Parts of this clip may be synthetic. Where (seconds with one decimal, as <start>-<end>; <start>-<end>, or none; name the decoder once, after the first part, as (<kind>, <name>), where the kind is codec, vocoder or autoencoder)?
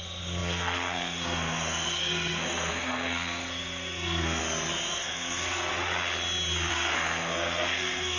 0.0-4.4 (codec, SNAC); 4.9-5.7; 6.7-8.2